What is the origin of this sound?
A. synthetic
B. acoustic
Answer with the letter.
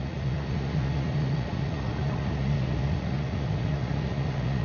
A